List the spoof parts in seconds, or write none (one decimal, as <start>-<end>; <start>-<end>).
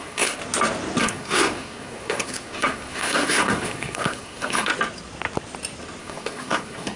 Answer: 0.0-0.4; 1.0-4.7; 6.0-7.0